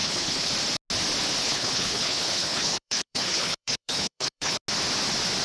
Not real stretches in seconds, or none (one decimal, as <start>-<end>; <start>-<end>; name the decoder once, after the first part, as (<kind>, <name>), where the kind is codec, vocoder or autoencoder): 0.0-0.5 (codec, HILCodec); 1.4-4.6